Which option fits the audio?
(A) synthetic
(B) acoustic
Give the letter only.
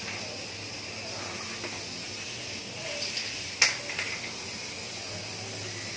B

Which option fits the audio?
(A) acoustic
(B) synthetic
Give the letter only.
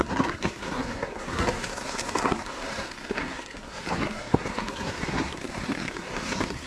B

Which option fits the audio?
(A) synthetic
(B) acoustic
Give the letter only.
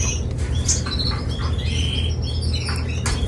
B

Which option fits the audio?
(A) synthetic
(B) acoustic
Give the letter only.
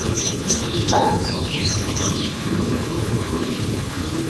A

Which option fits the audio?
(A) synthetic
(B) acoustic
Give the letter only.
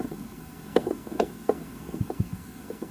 A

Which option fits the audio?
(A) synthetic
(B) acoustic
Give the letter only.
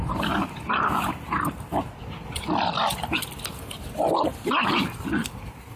B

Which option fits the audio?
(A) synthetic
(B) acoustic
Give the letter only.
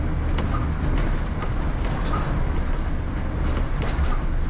B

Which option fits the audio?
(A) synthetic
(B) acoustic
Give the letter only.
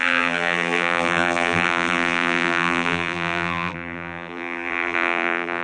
A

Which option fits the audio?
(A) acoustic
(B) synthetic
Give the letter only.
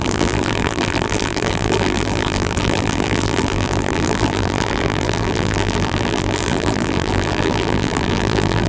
B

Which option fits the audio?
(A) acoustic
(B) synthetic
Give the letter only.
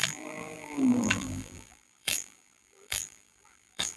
B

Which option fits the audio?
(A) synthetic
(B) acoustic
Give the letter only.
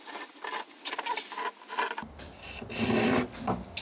B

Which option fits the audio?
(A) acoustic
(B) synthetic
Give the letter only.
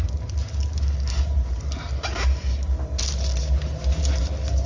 A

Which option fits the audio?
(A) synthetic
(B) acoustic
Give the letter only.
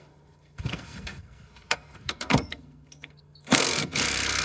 A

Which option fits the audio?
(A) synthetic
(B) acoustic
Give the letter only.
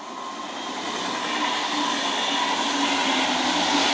B